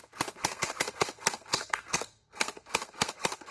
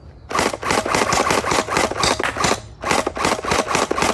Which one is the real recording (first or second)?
second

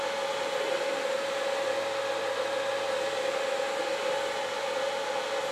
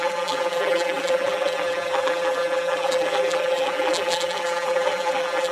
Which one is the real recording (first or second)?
first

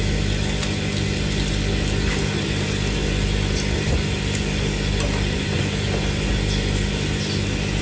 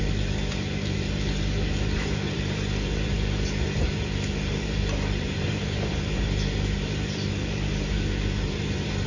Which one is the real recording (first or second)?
first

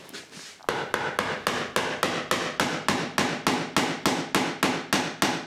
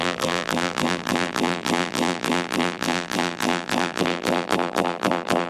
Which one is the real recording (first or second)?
first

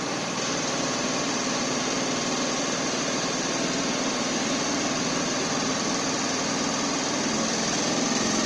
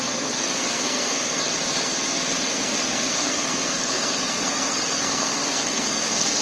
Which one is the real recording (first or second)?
first